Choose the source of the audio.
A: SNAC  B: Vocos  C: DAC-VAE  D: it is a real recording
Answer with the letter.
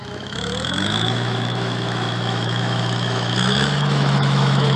C